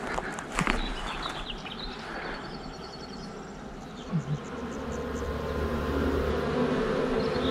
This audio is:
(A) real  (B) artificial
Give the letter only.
A